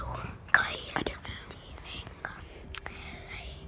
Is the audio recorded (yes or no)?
yes